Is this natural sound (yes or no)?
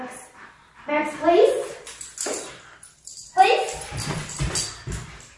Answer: yes